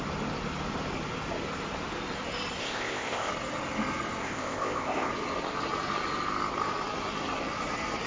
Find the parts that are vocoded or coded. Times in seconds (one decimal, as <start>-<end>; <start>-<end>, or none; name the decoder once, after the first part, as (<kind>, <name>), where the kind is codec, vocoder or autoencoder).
2.6-3.3 (codec, ZipCodec); 4.2-5.1